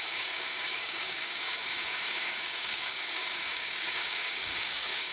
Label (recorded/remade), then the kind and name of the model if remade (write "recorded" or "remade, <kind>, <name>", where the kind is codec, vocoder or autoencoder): remade, codec, DAC